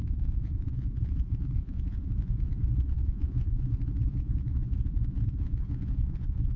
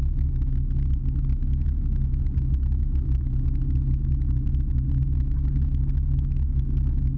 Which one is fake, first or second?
first